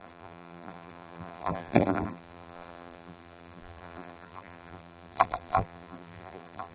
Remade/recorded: remade